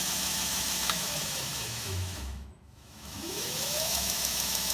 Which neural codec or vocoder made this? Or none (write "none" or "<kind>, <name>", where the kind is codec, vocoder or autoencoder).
autoencoder, DAC-VAE